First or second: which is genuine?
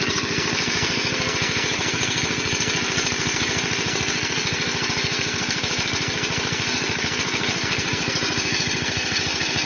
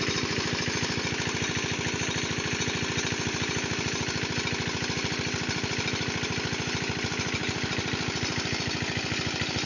second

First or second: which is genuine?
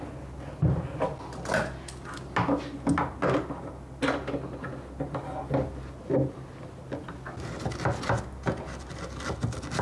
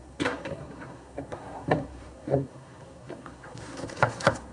first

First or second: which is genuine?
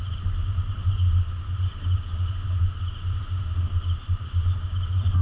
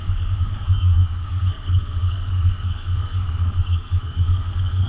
first